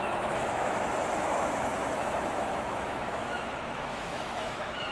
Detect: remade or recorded remade